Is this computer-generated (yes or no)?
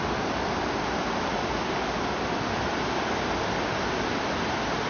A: no